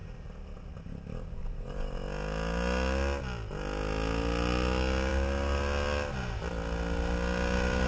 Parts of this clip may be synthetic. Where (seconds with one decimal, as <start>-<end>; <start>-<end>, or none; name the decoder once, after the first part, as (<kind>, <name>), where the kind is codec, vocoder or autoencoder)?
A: 1.4-2.0 (vocoder, BigVGAN v2)